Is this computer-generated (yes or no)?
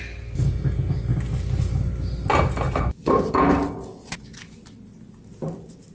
no